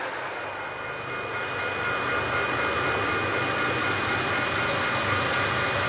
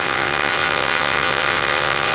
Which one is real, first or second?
first